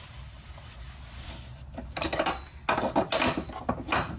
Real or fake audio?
real